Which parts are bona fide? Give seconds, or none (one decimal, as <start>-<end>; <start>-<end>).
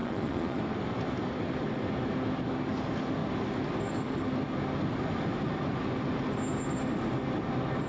0.6-7.9